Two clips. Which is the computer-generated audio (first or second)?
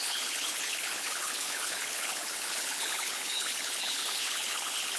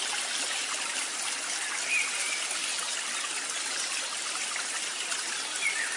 first